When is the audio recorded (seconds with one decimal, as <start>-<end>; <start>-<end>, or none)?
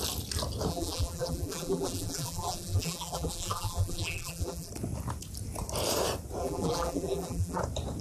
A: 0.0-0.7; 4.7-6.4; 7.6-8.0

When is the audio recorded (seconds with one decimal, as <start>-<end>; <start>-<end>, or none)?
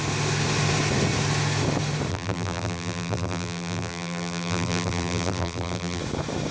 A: 0.0-2.1; 6.0-6.5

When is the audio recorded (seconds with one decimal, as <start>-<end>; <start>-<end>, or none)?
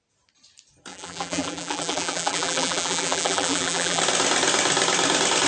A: 0.0-0.9; 4.0-5.5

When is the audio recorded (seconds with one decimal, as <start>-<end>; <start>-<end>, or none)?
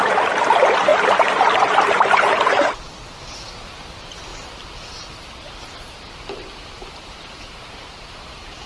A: none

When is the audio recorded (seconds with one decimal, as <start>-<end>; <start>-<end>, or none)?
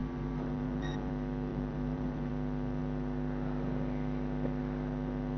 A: 1.1-1.5; 2.3-5.4